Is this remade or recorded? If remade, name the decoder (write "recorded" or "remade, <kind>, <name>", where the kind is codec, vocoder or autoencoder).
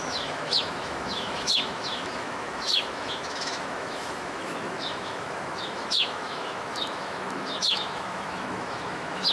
remade, autoencoder, DAC-VAE